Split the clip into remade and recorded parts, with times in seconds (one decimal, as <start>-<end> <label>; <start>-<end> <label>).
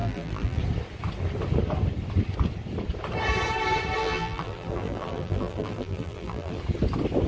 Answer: 0.0-0.6 remade; 0.6-4.0 recorded; 4.0-6.6 remade; 6.6-7.3 recorded